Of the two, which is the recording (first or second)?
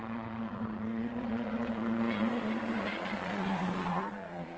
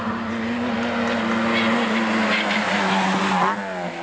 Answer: second